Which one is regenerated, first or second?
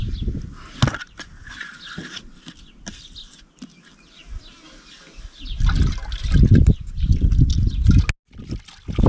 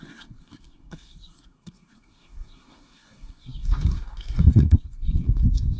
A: second